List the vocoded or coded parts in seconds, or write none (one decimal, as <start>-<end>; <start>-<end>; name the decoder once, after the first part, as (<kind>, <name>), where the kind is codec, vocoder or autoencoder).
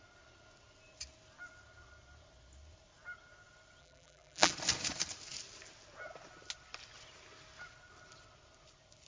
3.8-4.5 (vocoder, BigVGAN v2)